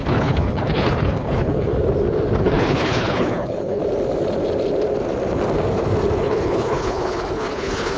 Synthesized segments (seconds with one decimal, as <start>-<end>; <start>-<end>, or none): 0.0-1.7; 2.4-3.8; 6.2-8.0